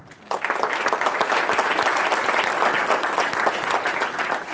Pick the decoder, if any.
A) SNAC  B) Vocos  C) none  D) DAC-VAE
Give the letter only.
C